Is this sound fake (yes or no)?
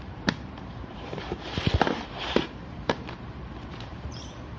yes